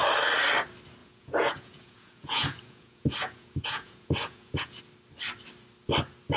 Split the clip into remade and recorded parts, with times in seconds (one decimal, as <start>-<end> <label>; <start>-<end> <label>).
0.0-1.0 recorded; 1.0-4.8 remade; 4.8-6.4 recorded